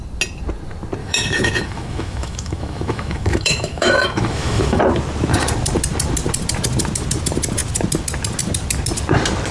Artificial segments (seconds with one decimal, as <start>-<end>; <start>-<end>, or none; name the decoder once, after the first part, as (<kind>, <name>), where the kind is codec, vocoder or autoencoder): 1.0-4.8 (autoencoder, DAC-VAE)